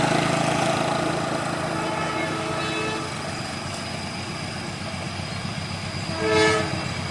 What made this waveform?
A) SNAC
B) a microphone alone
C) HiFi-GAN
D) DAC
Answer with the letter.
B